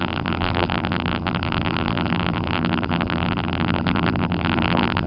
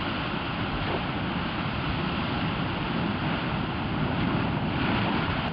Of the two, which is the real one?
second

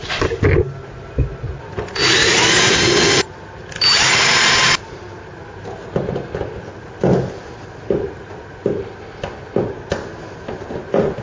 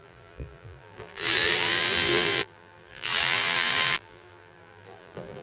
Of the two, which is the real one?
first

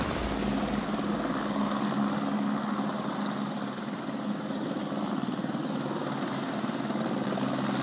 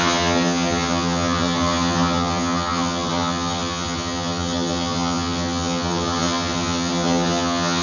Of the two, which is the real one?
first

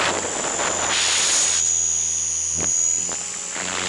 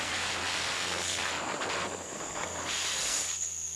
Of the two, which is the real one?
first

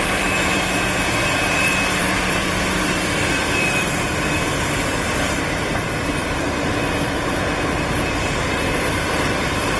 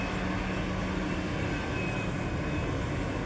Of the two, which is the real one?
second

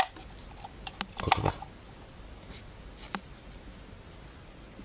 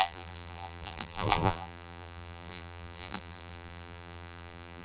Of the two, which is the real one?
first